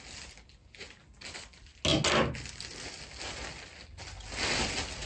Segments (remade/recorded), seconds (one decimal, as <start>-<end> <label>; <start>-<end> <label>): 0.0-5.1 recorded